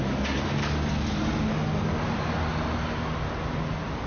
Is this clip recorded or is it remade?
recorded